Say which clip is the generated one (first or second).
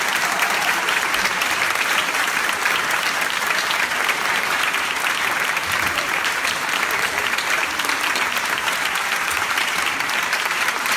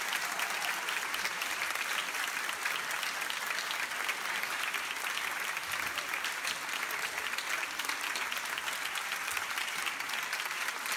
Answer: first